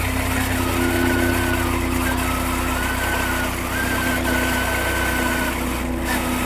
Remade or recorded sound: recorded